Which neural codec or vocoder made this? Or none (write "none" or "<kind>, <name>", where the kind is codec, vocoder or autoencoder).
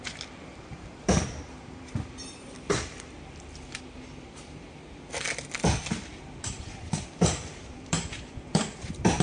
vocoder, BigVGAN v2